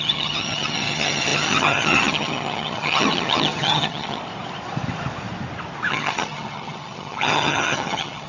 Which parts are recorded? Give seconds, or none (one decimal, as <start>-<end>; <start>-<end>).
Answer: 4.2-5.9